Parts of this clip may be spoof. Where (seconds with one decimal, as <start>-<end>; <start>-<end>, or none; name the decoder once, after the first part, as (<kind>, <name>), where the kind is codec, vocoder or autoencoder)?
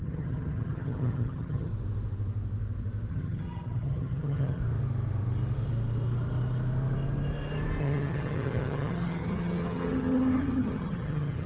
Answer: 0.0-1.7 (vocoder, HiFi-GAN); 3.1-4.6; 7.8-11.5